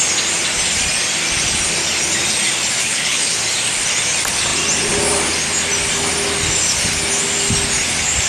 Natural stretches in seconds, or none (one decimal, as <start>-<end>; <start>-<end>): 0.0-2.8; 3.4-8.3

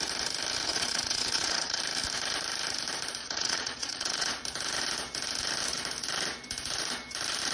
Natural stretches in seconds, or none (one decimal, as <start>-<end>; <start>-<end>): 0.0-0.7; 1.8-3.2; 4.3-7.5

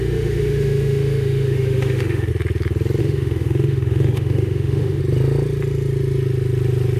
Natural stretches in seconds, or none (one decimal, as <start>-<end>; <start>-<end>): 2.3-3.0; 5.0-7.0

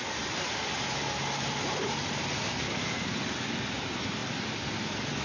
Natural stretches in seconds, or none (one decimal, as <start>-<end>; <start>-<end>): 0.0-5.2

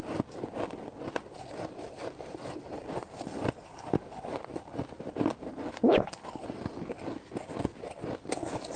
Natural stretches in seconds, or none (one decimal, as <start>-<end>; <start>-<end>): 0.0-2.0; 6.2-7.7; 8.3-8.8

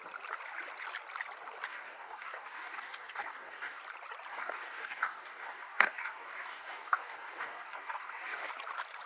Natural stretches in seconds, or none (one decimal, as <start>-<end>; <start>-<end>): 0.0-1.7; 3.8-4.3; 8.5-9.1

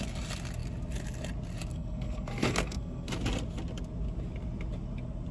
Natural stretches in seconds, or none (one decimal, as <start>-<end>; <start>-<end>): 0.0-1.7; 3.1-5.3

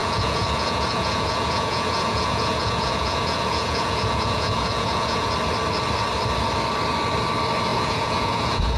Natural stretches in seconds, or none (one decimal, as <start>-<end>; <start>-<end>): 5.3-7.7